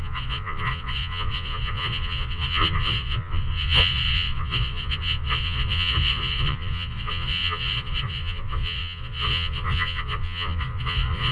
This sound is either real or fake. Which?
fake